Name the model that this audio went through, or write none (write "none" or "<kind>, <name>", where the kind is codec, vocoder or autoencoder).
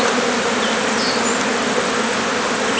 none